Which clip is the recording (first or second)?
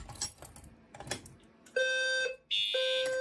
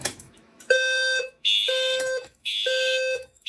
first